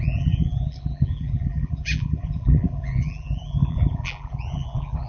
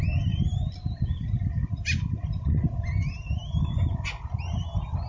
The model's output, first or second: first